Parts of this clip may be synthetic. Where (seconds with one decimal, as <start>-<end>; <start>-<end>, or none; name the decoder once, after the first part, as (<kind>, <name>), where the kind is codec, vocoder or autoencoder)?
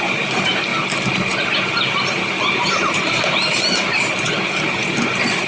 0.7-4.0 (vocoder, BigVGAN v2)